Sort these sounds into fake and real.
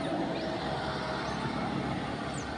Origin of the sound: real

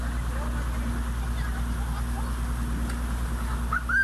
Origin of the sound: real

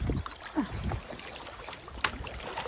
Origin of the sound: real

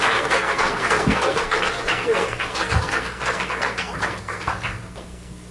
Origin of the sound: fake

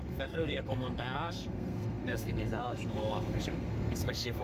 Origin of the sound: fake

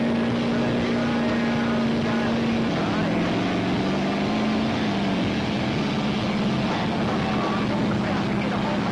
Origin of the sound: real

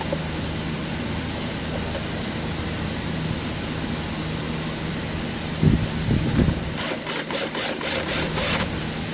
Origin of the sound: real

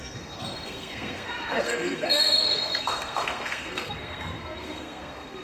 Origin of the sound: fake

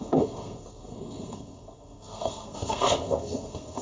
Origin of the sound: fake